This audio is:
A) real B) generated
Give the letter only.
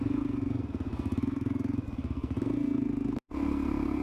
B